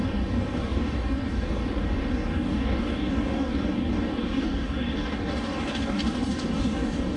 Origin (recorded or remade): remade